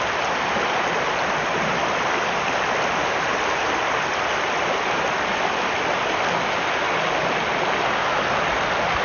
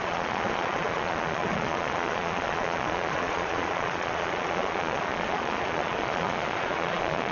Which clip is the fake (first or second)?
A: second